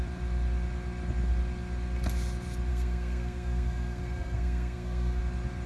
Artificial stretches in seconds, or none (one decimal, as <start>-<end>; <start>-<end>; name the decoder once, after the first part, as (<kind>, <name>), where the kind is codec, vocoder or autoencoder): 2.7-5.2 (codec, SNAC)